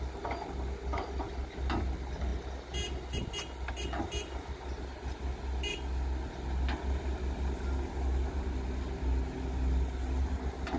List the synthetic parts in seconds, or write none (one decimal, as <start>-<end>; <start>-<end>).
none